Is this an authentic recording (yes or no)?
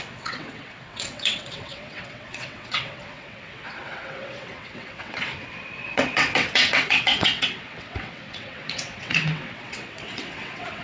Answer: no